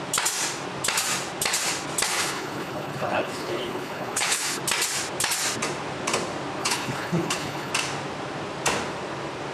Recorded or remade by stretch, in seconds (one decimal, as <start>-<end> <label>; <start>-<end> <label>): 0.0-2.1 recorded; 2.1-4.6 remade; 4.6-6.6 recorded; 6.6-7.7 remade; 7.7-9.5 recorded